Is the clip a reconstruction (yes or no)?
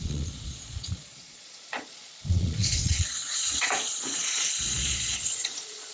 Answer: yes